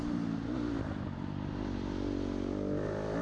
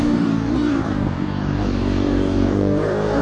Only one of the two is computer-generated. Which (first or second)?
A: second